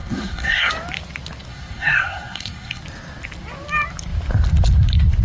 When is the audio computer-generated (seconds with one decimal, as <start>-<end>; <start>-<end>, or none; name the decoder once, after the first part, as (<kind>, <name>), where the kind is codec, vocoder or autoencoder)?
0.0-0.7 (codec, SNAC); 1.5-2.8